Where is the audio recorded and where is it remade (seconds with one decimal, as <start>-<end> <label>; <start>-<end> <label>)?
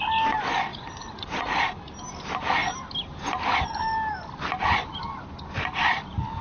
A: 0.0-0.7 recorded; 0.7-1.7 remade; 1.7-6.4 recorded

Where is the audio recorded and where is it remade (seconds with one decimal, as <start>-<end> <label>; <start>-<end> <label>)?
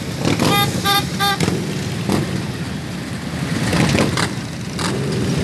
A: 0.0-5.4 recorded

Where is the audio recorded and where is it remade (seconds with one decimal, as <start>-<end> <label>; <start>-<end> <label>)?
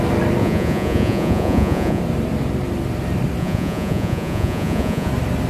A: 0.0-0.4 recorded; 0.4-2.0 remade; 2.0-3.4 recorded; 3.4-5.1 remade; 5.1-5.5 recorded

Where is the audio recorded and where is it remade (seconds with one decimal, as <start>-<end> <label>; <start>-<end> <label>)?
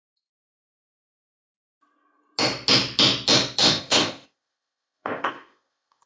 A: 0.0-3.6 recorded; 3.6-6.1 remade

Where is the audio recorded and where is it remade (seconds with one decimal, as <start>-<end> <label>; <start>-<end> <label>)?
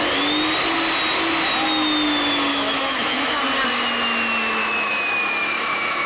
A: 0.0-2.5 recorded; 2.5-3.4 remade; 3.4-4.6 recorded; 4.6-6.1 remade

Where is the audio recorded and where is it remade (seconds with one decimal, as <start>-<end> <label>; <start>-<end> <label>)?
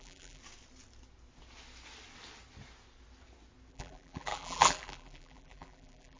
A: 0.0-0.4 remade; 0.4-3.7 recorded; 3.7-6.2 remade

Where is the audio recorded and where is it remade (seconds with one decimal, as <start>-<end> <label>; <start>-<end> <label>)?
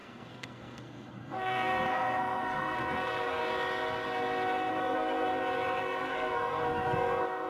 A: 0.0-3.4 remade; 3.4-4.7 recorded; 4.7-5.3 remade; 5.3-5.8 recorded; 5.8-7.5 remade